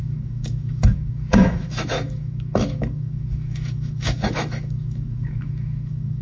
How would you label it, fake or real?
fake